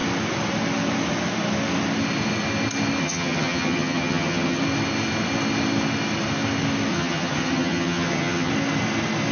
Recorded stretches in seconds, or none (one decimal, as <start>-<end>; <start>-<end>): 0.0-3.0; 4.6-6.9; 8.5-9.3

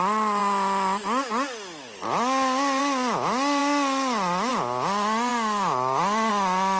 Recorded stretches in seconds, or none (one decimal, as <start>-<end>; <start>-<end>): 0.0-6.8

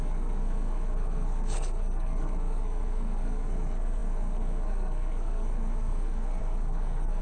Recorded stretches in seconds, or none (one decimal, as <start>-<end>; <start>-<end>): none